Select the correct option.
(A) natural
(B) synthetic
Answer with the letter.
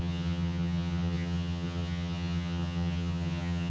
B